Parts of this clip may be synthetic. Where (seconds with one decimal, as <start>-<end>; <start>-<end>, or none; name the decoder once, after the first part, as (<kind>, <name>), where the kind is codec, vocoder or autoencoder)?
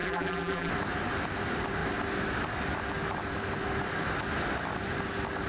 0.0-0.7 (vocoder, BigVGAN v2)